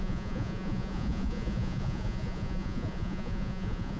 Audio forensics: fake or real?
fake